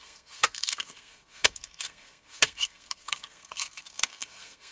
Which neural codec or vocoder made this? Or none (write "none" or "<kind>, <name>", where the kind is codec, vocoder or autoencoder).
codec, SNAC